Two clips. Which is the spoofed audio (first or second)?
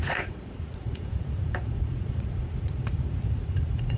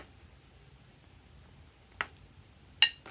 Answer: first